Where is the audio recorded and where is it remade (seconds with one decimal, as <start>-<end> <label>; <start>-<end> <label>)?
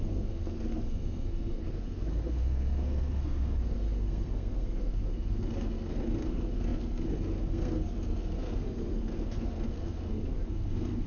0.0-11.1 remade